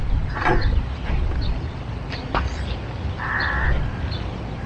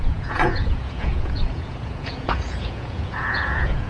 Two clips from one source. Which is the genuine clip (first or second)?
first